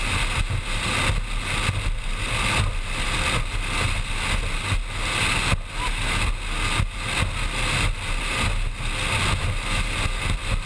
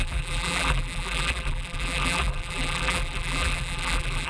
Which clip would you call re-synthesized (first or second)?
second